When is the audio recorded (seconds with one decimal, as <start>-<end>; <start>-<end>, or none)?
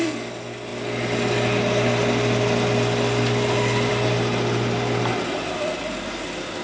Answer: 0.0-6.6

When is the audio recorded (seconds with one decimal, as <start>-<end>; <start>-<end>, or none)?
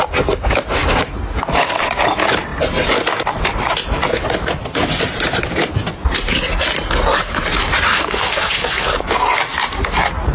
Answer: 0.0-7.9; 9.1-10.3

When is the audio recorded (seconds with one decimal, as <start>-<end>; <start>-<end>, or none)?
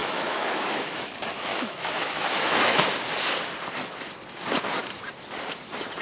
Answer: 1.1-1.5; 2.9-6.0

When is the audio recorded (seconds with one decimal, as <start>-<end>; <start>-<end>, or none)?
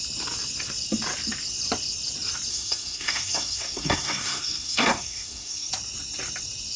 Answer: 0.0-2.5; 5.7-6.8